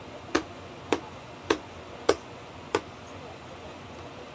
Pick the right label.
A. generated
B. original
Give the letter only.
A